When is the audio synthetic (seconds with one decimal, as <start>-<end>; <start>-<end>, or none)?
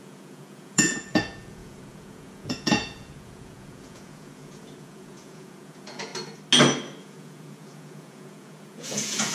0.0-6.1; 7.0-9.3